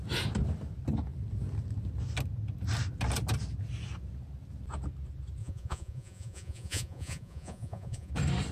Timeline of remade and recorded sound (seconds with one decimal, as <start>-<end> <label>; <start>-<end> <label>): 0.0-5.4 recorded; 5.4-8.1 remade; 8.1-8.5 recorded